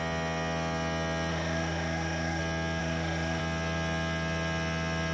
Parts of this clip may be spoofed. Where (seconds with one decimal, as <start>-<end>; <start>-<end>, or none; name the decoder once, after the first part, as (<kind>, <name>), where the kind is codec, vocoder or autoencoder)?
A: 1.3-2.4 (autoencoder, DAC-VAE); 2.8-3.4

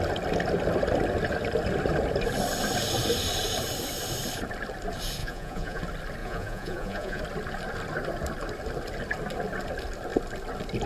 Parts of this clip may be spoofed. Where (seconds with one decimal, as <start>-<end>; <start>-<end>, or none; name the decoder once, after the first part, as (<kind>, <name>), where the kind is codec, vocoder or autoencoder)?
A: 5.2-5.8 (vocoder, Vocos); 6.2-7.2